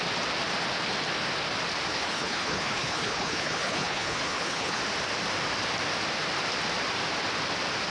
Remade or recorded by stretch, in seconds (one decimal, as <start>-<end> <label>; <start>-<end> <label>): 0.0-1.9 recorded; 1.9-4.8 remade; 4.8-7.9 recorded